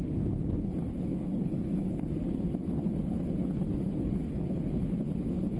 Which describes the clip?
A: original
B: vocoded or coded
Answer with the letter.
B